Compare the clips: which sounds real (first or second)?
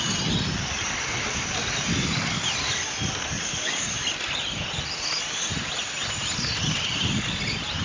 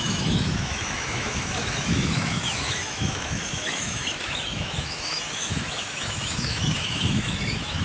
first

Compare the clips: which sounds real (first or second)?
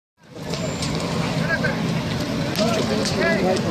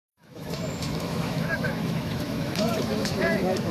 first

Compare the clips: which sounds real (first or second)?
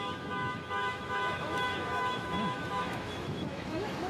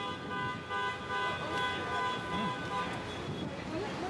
second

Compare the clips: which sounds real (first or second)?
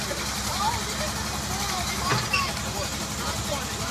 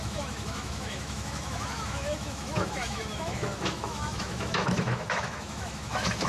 first